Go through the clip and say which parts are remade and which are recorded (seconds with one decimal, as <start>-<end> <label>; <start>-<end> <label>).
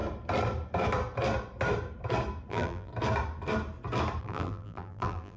0.0-2.5 recorded; 2.5-2.9 remade; 2.9-4.2 recorded; 4.2-5.4 remade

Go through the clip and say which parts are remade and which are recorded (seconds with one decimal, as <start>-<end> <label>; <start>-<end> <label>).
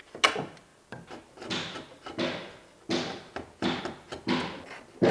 0.0-5.1 recorded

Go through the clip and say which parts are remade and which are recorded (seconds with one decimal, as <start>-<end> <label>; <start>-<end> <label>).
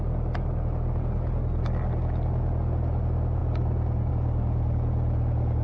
0.0-5.6 recorded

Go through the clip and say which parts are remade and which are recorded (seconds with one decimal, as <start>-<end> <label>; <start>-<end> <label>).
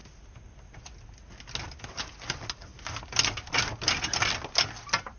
0.0-5.2 recorded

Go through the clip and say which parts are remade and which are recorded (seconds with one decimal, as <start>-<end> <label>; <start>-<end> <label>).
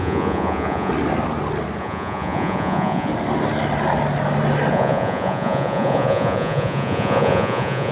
0.0-0.9 remade; 0.9-1.8 recorded; 1.8-3.1 remade; 3.1-4.7 recorded; 4.7-7.9 remade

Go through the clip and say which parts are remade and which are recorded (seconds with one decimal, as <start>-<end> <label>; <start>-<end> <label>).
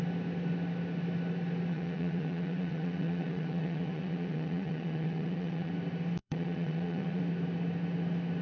0.0-1.7 recorded; 1.7-5.7 remade; 5.7-6.2 recorded; 6.2-7.2 remade; 7.2-8.4 recorded